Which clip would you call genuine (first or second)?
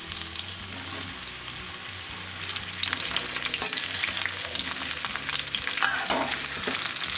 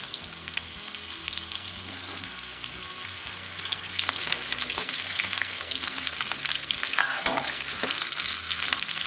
first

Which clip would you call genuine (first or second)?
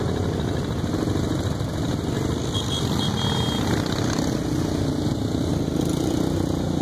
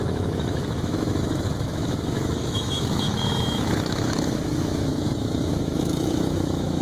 first